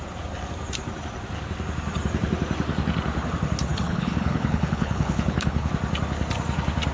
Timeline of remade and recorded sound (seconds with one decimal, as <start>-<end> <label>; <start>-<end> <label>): 0.0-3.7 recorded; 3.7-5.7 remade; 5.7-6.9 recorded